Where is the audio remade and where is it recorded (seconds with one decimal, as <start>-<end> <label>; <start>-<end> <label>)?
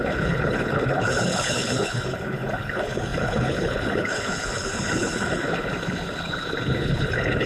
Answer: 0.0-7.5 remade